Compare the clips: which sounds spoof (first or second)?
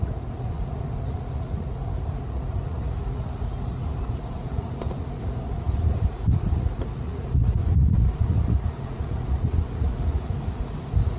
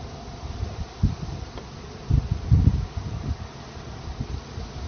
first